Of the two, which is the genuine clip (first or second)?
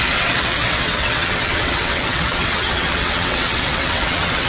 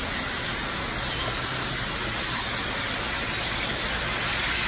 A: second